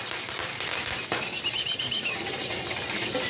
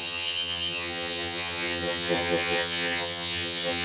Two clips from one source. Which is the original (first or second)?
first